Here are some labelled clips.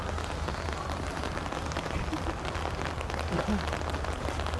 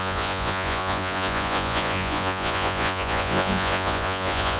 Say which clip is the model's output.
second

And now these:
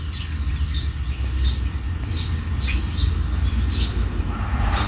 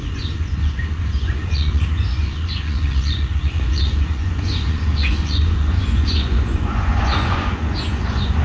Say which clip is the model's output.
second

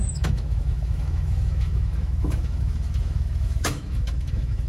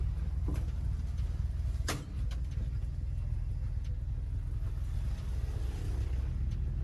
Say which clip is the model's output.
first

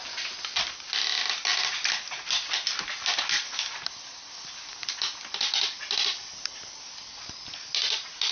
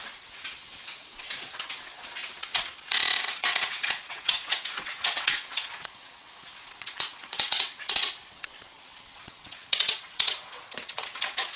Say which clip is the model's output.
second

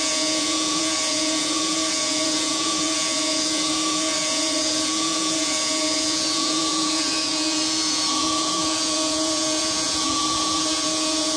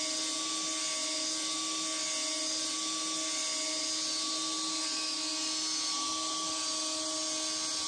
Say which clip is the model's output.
first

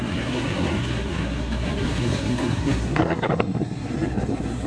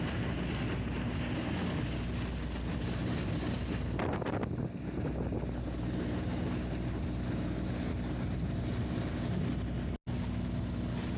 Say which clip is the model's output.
first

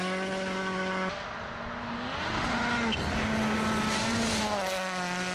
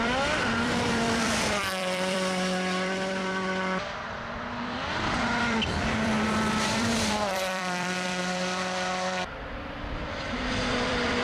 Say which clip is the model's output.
second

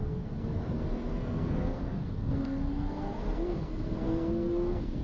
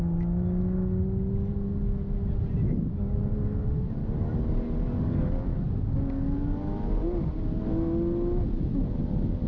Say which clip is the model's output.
first